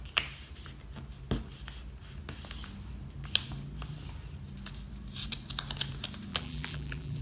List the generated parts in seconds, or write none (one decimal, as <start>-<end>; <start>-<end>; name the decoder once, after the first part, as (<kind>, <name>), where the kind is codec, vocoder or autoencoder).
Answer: 6.3-7.2 (vocoder, BigVGAN v2)